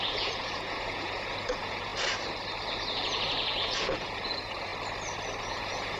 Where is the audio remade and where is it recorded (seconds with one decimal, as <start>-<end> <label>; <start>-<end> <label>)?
0.0-1.9 remade; 1.9-2.9 recorded; 2.9-4.7 remade; 4.7-5.4 recorded; 5.4-6.0 remade